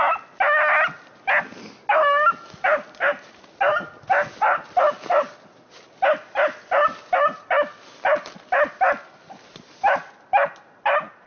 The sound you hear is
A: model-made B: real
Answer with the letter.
B